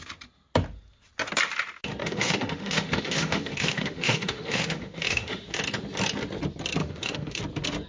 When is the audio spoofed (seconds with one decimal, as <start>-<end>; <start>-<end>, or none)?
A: 2.0-5.6; 6.8-7.4

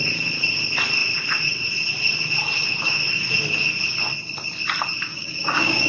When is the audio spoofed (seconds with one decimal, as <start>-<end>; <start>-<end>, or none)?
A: 5.1-5.9

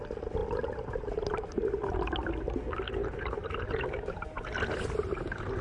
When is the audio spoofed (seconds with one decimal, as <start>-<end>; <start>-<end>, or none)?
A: none

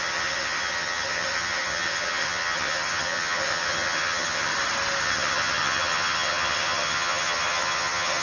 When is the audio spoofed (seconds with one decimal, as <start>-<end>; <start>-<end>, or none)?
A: 0.0-4.5; 5.0-8.2

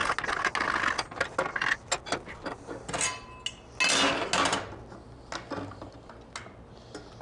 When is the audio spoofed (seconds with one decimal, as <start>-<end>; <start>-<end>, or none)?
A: none

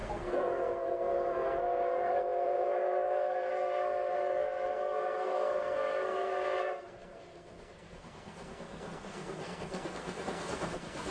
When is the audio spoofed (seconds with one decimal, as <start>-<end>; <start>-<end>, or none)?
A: 0.0-11.1

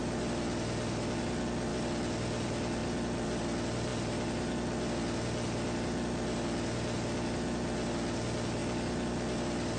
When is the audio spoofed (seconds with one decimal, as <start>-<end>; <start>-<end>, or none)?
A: none